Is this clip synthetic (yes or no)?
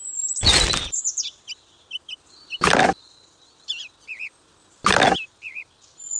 no